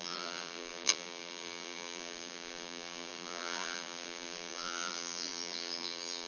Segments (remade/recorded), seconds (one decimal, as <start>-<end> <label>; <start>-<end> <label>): 0.0-6.3 remade